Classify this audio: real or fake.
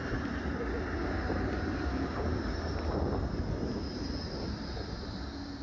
real